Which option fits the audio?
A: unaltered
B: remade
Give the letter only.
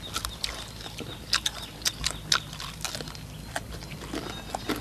A